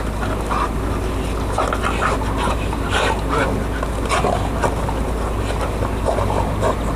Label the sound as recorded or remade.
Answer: recorded